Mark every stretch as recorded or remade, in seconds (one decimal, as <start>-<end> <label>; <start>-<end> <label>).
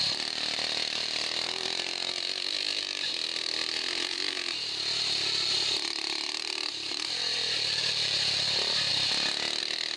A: 0.0-8.9 remade; 8.9-9.6 recorded; 9.6-10.0 remade